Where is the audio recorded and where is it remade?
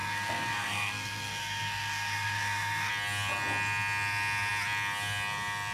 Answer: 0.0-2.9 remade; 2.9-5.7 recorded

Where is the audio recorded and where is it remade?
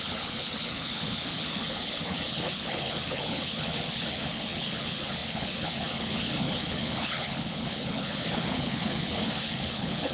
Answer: 0.0-10.1 remade